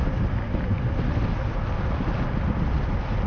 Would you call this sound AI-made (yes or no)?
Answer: no